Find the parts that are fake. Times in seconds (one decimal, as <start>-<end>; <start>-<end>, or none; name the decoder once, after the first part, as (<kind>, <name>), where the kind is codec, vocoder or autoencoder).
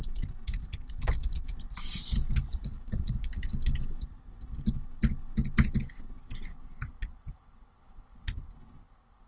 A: 2.5-3.4 (vocoder, Vocos)